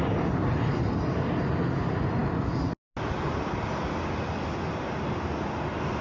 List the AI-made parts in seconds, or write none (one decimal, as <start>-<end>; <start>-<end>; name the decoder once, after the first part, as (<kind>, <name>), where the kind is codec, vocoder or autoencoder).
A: none